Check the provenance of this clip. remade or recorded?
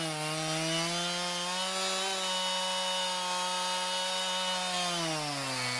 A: recorded